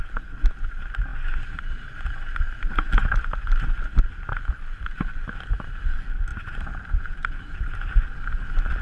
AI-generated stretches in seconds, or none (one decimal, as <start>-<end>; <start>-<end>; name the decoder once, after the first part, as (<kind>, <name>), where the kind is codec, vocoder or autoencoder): none